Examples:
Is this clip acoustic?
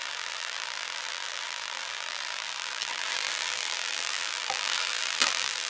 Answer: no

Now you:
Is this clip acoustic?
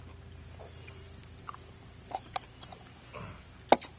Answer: yes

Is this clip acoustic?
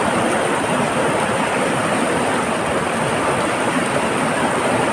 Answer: no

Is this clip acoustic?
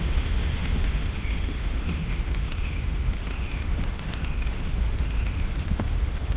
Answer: no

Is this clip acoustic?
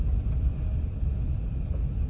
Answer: yes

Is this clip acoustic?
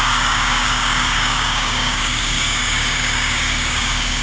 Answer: no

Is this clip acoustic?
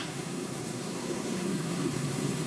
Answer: no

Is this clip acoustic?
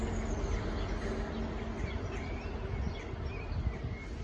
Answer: yes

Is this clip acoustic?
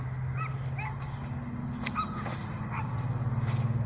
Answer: yes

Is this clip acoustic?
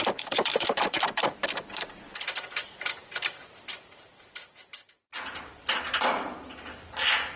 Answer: no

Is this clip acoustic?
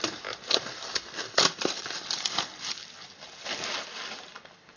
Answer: yes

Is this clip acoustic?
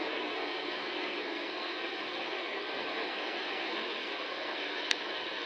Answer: no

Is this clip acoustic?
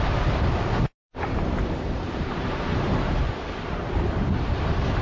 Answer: no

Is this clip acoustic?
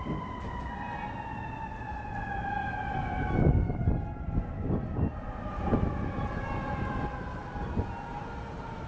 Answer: yes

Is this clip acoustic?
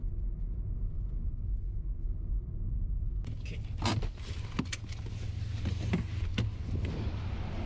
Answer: yes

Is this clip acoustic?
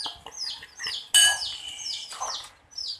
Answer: yes